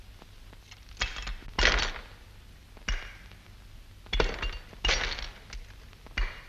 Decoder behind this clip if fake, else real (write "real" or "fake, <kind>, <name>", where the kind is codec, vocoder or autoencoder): real